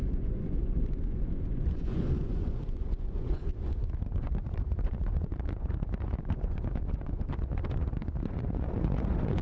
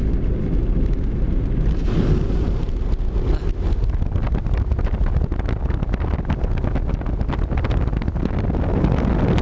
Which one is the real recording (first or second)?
second